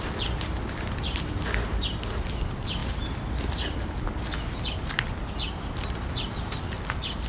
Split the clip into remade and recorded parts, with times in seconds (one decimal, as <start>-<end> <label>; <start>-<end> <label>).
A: 0.0-7.3 recorded